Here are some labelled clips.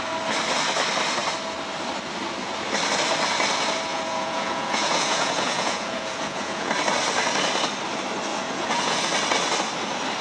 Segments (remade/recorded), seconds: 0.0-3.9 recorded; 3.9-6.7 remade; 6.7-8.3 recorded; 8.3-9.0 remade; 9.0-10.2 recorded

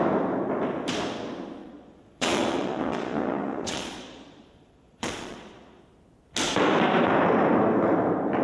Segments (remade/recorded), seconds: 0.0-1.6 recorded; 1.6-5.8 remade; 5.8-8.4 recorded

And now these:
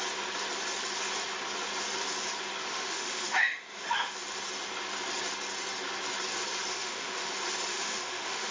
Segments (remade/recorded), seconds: 0.0-2.7 recorded; 2.7-4.1 remade; 4.1-6.7 recorded; 6.7-7.3 remade; 7.3-7.7 recorded; 7.7-8.5 remade